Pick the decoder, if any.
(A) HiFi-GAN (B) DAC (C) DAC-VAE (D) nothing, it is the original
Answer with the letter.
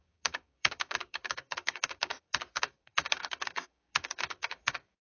B